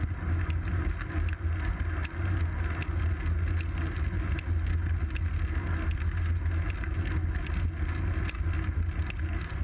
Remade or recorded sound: recorded